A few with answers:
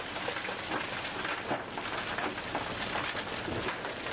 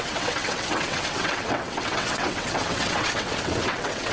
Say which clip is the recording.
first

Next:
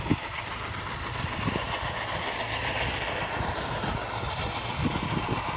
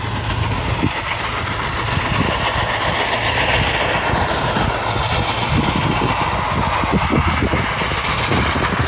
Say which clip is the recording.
second